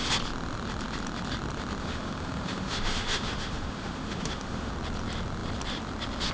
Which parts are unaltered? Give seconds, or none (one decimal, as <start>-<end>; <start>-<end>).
0.0-1.8; 4.7-6.3